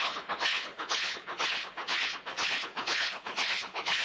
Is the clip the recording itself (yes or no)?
no